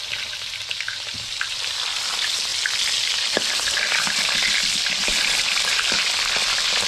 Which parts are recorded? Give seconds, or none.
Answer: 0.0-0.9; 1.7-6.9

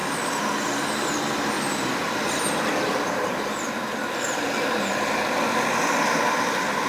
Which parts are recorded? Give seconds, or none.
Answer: 0.0-6.9

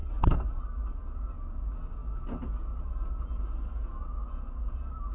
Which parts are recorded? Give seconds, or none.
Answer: 0.0-5.1

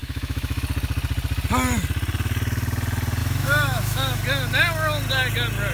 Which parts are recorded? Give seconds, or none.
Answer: 0.6-3.2; 4.2-5.7

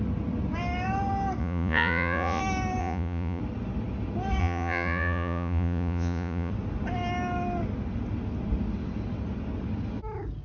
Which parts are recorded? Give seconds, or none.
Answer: 0.0-1.4; 2.4-2.8; 3.4-4.4; 6.5-10.4